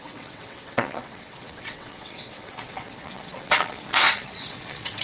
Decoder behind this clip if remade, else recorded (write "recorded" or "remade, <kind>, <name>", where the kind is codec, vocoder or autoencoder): remade, vocoder, WaveNeXt